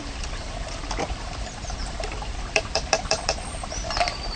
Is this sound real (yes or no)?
no